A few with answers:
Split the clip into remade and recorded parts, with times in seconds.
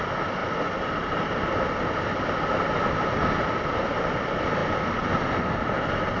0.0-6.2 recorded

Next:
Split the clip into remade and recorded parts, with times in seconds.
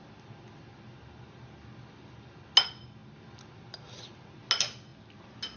0.0-5.6 recorded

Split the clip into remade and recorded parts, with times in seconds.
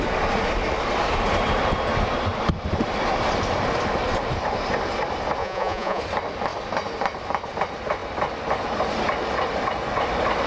0.0-5.4 recorded; 5.4-6.0 remade; 6.0-10.5 recorded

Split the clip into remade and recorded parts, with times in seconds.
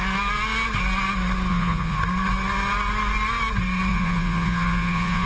0.0-1.5 recorded; 1.5-2.0 remade; 2.0-3.9 recorded; 3.9-5.3 remade